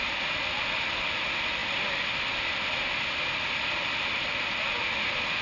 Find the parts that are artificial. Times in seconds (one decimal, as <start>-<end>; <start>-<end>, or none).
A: none